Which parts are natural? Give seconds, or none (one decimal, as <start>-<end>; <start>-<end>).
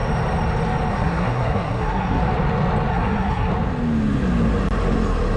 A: 0.0-0.9; 2.2-2.9; 3.5-5.4